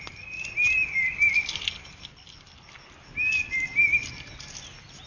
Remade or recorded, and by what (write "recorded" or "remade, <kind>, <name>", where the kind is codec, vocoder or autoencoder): recorded